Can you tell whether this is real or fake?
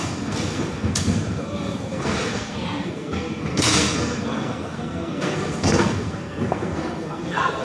fake